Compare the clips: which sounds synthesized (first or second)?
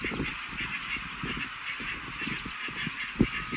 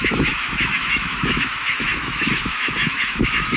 second